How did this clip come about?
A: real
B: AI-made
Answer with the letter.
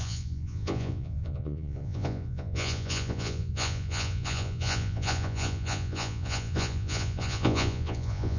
B